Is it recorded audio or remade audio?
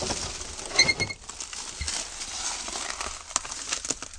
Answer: recorded